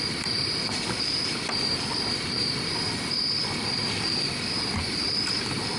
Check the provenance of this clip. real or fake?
fake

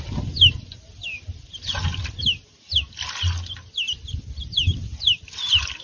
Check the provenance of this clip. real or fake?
real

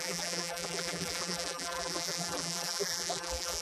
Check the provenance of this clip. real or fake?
fake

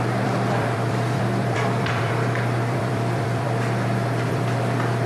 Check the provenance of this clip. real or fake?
fake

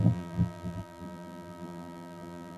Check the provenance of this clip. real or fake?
fake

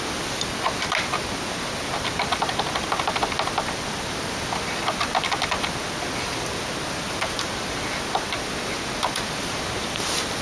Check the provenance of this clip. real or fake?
real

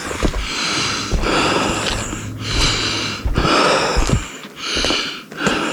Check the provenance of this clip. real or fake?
real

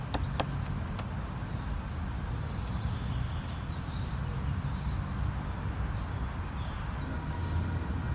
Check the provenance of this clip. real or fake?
real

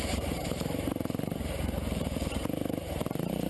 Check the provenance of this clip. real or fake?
fake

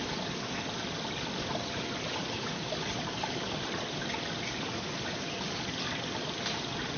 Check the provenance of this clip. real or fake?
real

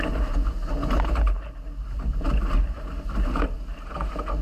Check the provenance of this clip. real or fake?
fake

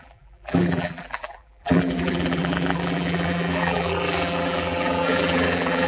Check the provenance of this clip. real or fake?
fake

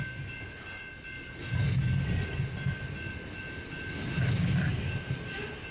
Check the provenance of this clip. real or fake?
real